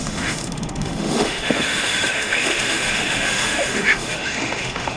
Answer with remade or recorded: remade